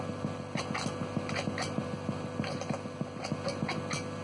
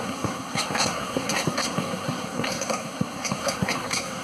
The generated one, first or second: second